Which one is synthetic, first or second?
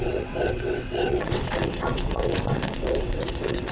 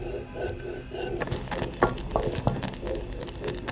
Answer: first